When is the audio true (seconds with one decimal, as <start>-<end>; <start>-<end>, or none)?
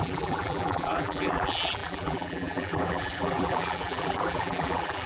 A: none